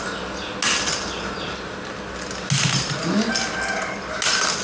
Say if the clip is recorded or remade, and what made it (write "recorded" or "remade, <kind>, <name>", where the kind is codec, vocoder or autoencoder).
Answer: recorded